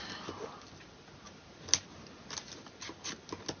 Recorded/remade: recorded